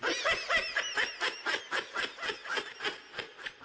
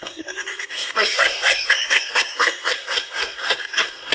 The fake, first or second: second